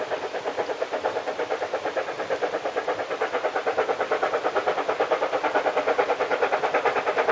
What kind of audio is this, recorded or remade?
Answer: remade